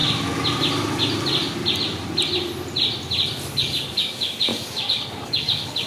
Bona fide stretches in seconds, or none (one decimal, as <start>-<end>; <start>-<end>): 0.0-3.5